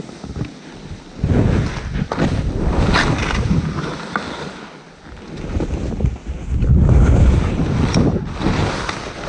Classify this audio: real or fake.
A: real